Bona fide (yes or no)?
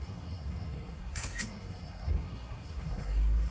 no